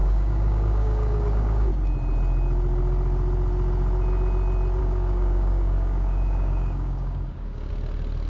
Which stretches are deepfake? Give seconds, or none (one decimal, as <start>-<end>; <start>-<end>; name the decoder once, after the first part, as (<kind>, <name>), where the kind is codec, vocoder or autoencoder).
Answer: 0.0-1.7 (codec, DAC); 4.8-7.7